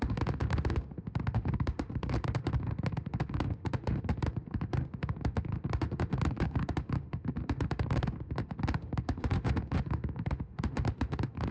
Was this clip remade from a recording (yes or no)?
yes